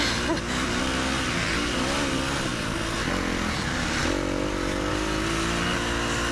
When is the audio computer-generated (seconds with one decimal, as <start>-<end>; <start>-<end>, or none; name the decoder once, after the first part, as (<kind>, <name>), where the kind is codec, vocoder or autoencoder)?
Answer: none